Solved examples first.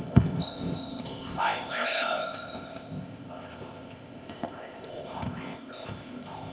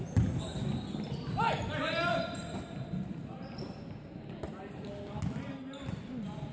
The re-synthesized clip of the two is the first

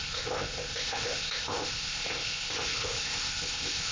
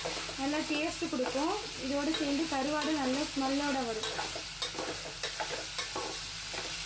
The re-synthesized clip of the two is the first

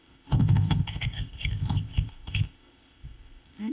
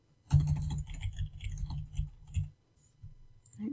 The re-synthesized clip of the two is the first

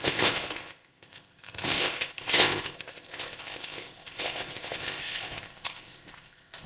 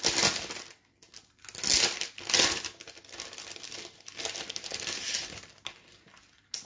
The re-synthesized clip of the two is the first